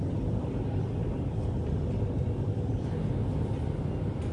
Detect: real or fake real